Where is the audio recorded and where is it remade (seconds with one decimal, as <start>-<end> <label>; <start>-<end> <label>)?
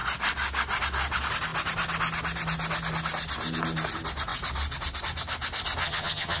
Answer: 0.0-5.8 recorded; 5.8-6.4 remade